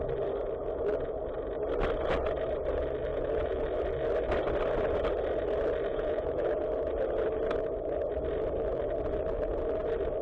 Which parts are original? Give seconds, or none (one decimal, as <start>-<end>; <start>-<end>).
0.0-3.1; 3.6-5.9; 6.5-10.2